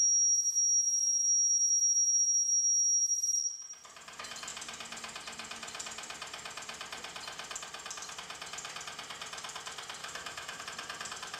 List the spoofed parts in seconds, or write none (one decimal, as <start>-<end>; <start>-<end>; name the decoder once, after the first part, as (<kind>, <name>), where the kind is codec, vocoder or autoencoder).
10.0-10.6 (autoencoder, DAC-VAE)